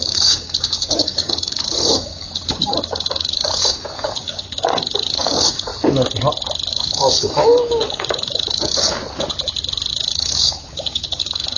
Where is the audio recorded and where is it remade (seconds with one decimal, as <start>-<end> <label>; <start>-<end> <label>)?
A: 0.0-5.7 remade; 5.7-6.7 recorded; 6.7-9.0 remade; 9.0-9.9 recorded; 9.9-11.6 remade

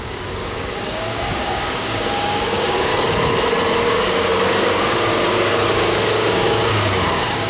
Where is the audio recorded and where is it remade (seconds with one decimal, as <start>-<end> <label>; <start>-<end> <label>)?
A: 0.0-2.9 remade; 2.9-3.8 recorded; 3.8-7.5 remade

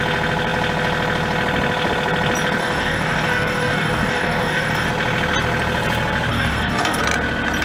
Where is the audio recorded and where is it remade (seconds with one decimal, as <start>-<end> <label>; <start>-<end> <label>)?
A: 0.0-2.6 recorded; 2.6-4.9 remade; 4.9-6.3 recorded; 6.3-7.0 remade; 7.0-7.6 recorded